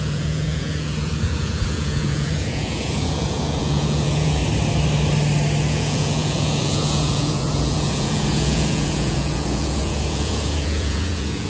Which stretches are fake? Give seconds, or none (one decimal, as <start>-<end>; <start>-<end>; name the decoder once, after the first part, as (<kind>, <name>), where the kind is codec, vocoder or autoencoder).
0.0-4.4 (vocoder, Vocos); 5.6-11.5